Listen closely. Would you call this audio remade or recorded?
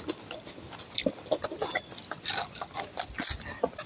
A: recorded